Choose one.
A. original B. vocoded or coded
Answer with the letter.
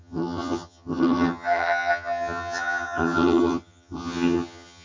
B